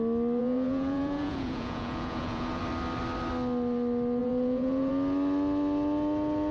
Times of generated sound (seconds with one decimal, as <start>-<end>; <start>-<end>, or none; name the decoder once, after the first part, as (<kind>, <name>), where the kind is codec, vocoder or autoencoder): 0.4-2.6 (vocoder, Vocos); 4.2-4.9